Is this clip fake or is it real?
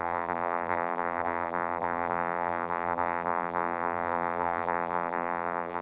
fake